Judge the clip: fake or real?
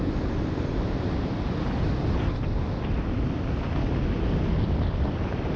real